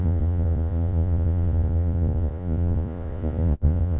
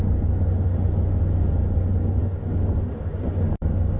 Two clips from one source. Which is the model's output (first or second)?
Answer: first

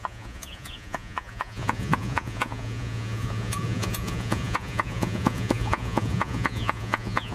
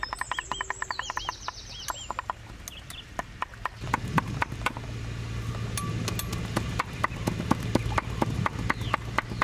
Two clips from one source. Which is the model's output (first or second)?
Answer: first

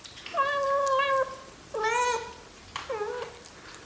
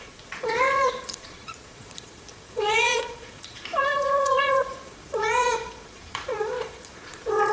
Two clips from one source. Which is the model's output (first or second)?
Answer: second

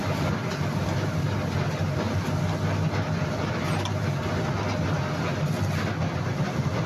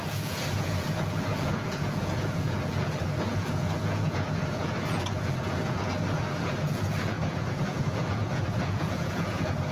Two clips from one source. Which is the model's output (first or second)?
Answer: second